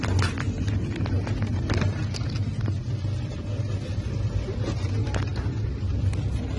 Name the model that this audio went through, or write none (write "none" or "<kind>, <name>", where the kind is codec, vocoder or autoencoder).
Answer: none